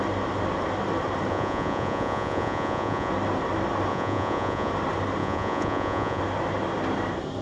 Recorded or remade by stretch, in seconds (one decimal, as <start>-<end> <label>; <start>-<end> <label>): 0.0-1.3 recorded; 1.3-3.1 remade; 3.1-3.9 recorded; 3.9-4.7 remade; 4.7-5.2 recorded; 5.2-6.2 remade; 6.2-7.4 recorded